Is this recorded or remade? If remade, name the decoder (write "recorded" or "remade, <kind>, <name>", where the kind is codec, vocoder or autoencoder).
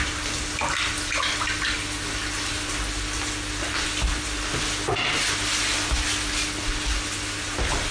recorded